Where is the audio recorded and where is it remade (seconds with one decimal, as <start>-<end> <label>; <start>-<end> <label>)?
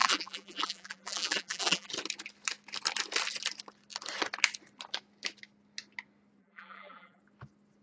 0.0-1.9 remade; 1.9-6.4 recorded; 6.4-7.2 remade; 7.2-7.8 recorded